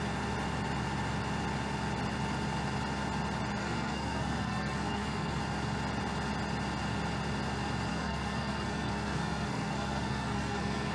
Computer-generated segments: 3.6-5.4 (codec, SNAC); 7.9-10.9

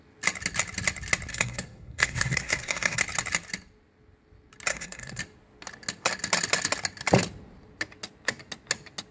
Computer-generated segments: 1.3-3.0 (codec, SNAC); 4.7-5.2

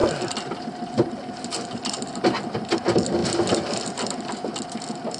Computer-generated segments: none

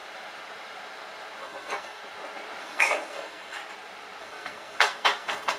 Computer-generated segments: 1.4-2.0 (codec, SNAC); 2.6-3.6; 4.2-5.6

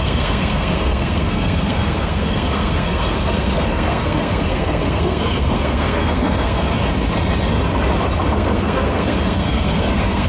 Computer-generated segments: 0.0-6.6 (codec, SNAC); 8.3-10.3

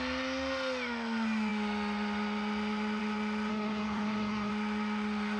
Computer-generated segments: 3.5-4.5 (codec, SNAC)